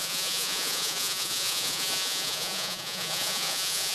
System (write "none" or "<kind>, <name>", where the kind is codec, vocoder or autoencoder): vocoder, Vocos